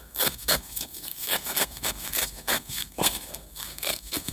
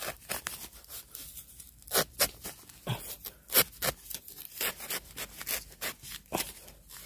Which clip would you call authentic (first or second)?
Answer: second